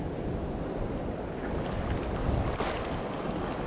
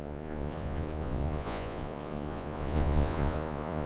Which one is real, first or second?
first